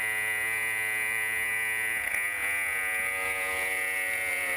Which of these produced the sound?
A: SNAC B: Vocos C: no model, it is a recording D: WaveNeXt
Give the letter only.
B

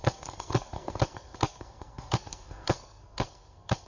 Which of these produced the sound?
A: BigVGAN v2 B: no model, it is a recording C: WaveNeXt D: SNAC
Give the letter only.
D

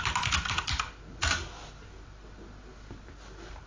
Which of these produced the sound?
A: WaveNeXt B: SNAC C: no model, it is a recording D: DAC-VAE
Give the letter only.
C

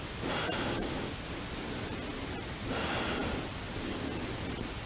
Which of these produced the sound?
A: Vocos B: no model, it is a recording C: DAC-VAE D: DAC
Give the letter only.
B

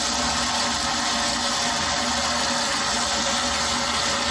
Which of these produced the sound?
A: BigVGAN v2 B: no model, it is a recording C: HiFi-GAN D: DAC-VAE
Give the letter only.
B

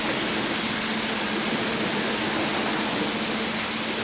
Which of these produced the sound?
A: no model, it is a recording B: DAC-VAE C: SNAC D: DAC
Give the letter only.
A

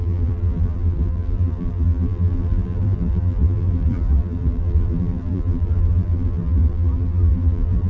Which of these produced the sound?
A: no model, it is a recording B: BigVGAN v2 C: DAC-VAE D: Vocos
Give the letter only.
B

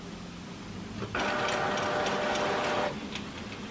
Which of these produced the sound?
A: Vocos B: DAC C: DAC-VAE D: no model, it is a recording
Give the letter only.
D